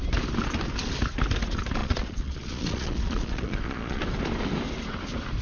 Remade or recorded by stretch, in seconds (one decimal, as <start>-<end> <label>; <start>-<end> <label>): 0.0-1.8 recorded; 1.8-4.0 remade; 4.0-5.4 recorded